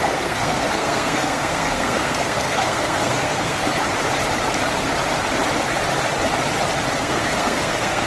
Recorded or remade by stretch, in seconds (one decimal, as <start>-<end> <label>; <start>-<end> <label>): 0.0-3.6 remade; 3.6-7.0 recorded; 7.0-8.1 remade